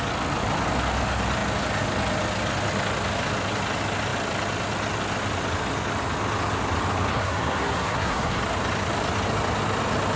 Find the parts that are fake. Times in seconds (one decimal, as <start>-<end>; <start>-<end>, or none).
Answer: 7.1-8.4